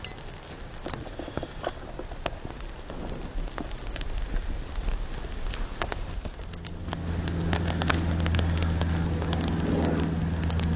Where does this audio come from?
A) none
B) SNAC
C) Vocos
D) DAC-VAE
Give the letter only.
A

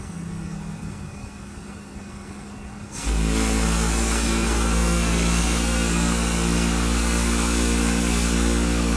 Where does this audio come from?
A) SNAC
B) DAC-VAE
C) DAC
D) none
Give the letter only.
A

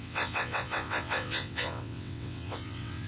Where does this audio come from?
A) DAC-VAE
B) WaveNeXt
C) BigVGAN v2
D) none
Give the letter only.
B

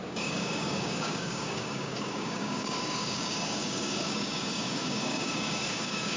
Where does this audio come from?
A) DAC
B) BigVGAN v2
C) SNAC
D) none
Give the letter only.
A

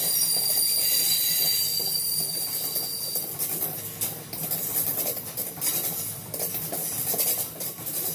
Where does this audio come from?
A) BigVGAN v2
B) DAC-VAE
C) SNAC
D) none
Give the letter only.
D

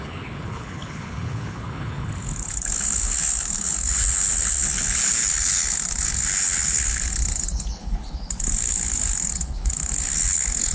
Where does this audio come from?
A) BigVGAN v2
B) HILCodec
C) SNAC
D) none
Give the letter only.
B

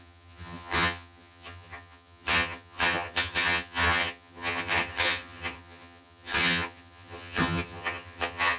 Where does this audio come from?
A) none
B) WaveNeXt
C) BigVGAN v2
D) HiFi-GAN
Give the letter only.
D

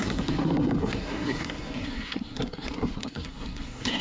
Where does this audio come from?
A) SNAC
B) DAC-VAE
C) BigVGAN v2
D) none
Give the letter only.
A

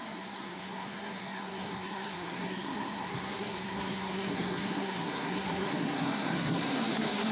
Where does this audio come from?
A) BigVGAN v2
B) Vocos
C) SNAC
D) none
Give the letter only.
C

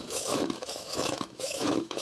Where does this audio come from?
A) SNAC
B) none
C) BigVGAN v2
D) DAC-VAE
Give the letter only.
D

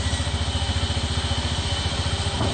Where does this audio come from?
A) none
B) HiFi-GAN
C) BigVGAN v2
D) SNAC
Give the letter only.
A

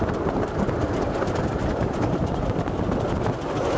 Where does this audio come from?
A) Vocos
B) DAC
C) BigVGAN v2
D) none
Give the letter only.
D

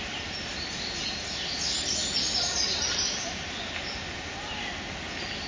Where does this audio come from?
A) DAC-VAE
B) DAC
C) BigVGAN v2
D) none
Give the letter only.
D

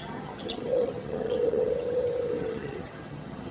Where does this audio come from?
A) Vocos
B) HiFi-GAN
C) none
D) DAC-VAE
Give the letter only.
B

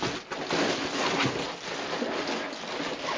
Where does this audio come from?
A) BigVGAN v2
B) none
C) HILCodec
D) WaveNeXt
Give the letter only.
B